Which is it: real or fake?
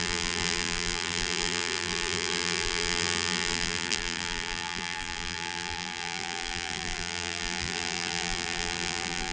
fake